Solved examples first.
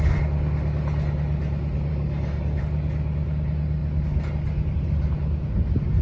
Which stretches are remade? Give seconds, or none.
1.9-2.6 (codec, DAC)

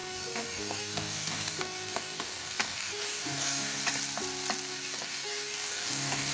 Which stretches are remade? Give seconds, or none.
0.0-3.8 (codec, DAC); 4.7-6.3

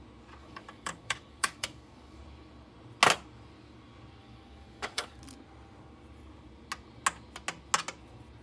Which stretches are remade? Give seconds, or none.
0.4-2.2 (codec, DAC); 4.2-5.2

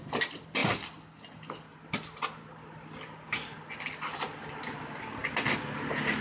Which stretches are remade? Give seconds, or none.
none

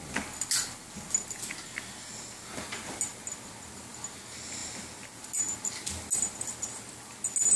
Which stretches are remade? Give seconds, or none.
none